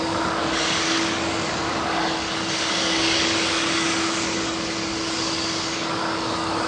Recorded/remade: remade